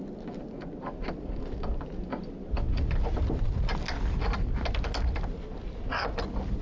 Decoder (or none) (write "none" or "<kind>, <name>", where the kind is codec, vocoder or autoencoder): none